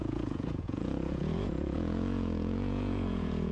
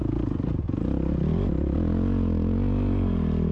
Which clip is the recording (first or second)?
second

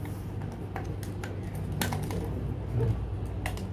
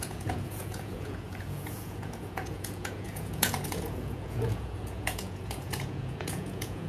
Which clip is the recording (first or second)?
first